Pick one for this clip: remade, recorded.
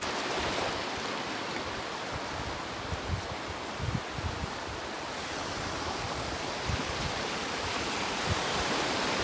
recorded